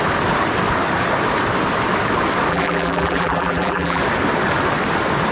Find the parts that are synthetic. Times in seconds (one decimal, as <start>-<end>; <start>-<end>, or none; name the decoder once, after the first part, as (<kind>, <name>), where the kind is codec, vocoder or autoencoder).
2.5-4.0 (vocoder, BigVGAN v2)